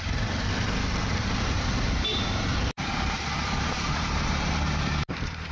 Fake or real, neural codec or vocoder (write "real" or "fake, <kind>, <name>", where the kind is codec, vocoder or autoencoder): fake, vocoder, BigVGAN v2